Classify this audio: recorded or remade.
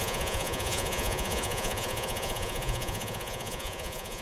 remade